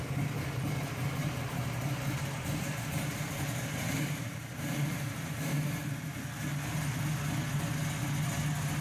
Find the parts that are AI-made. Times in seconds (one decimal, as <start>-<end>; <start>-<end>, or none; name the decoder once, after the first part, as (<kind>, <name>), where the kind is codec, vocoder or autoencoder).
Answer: 1.2-5.8 (vocoder, BigVGAN v2)